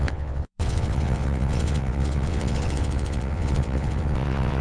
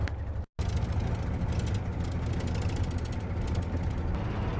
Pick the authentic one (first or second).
second